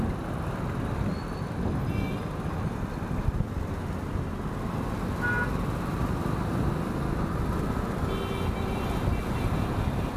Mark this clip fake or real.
real